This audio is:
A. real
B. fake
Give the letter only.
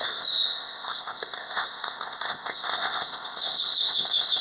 B